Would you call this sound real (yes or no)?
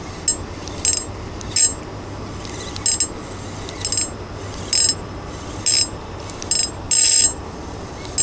yes